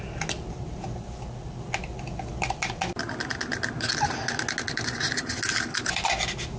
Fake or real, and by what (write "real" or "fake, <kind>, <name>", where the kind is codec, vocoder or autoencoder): real